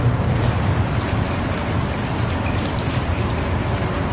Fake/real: fake